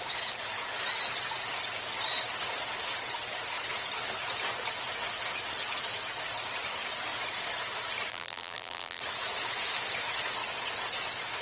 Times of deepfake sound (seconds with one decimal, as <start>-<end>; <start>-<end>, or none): 8.1-9.0